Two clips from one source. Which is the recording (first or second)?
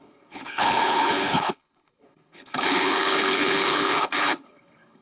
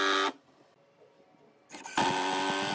second